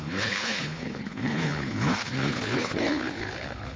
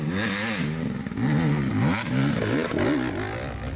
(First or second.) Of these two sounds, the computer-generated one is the first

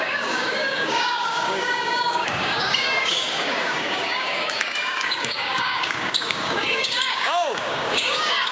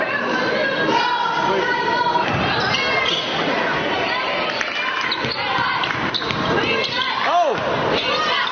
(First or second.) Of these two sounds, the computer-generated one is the first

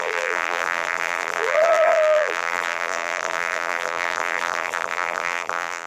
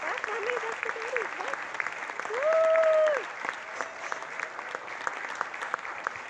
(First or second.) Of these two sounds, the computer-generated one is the first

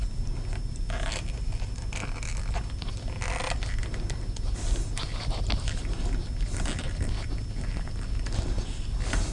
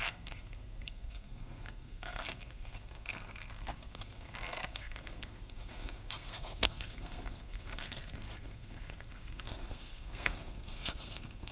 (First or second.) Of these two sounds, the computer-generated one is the second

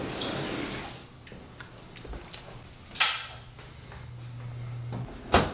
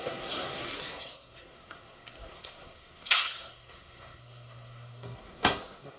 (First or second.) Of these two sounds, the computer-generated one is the second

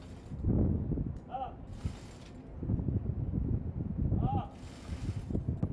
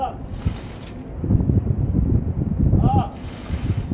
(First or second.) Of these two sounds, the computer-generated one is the second